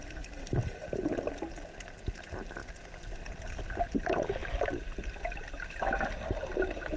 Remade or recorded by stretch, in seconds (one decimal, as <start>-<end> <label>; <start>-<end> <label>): 0.0-7.0 recorded